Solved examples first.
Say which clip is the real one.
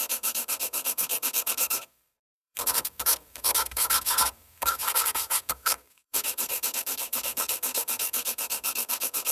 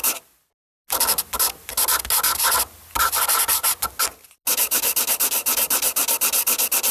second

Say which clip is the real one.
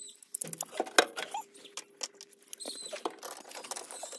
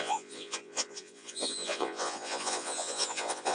first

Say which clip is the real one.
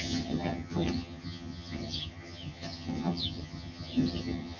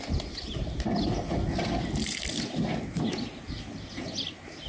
second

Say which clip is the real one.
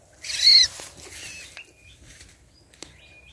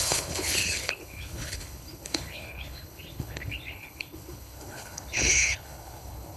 first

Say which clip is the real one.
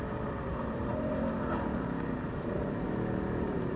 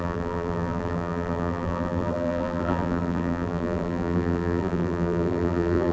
first